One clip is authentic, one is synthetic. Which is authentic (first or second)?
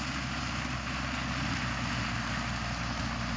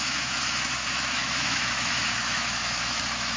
first